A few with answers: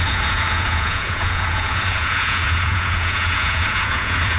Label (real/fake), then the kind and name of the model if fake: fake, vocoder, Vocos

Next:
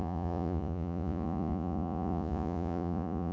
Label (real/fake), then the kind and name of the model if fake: fake, vocoder, Vocos